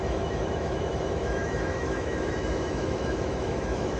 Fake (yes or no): yes